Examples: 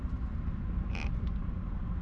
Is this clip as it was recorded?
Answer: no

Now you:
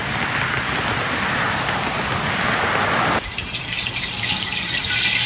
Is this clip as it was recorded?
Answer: yes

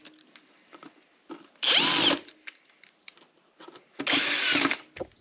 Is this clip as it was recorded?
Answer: yes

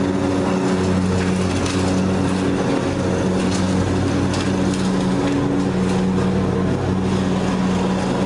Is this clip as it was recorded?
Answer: yes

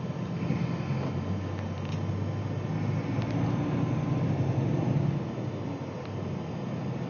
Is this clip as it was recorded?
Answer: yes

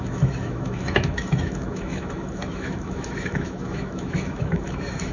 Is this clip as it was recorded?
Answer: no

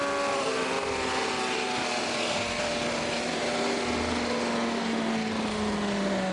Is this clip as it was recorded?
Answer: yes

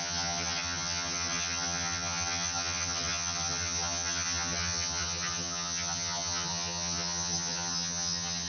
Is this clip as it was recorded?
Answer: no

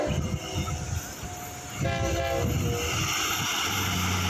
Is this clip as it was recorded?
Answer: yes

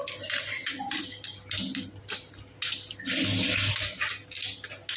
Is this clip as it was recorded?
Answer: yes